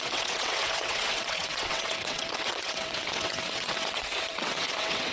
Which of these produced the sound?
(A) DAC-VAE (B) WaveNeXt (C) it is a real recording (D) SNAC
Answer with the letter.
B